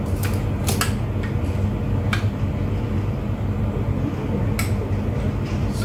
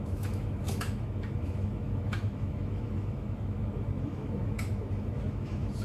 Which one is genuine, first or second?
first